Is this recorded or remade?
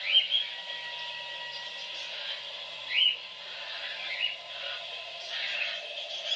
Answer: recorded